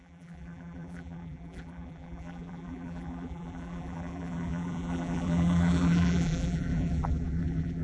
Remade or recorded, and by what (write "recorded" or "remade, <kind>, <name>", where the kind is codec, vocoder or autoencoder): remade, vocoder, BigVGAN v2